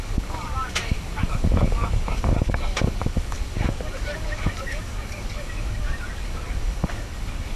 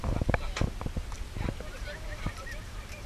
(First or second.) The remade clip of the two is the first